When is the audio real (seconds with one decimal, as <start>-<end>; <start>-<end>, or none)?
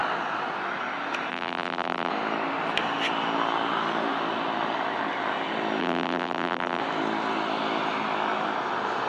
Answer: 0.0-1.3; 2.1-5.8; 6.8-9.1